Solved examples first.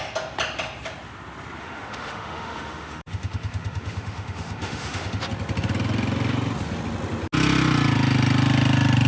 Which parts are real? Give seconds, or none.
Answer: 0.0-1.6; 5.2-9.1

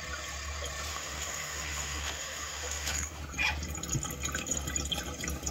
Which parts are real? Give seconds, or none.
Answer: 0.0-0.9; 3.2-5.5

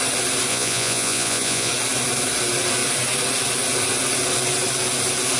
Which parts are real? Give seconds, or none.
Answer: 0.0-0.5; 1.7-5.4